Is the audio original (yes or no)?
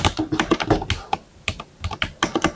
yes